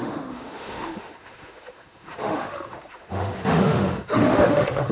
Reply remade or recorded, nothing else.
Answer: remade